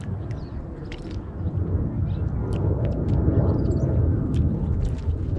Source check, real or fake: real